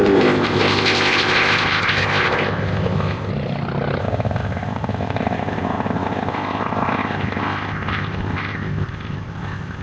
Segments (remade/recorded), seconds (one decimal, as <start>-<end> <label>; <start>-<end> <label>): 0.0-3.3 remade; 3.3-4.0 recorded; 4.0-9.8 remade